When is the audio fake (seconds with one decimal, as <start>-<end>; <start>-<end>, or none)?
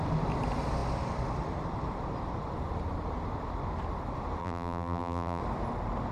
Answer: 4.4-5.4